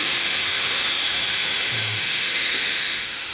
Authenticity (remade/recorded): remade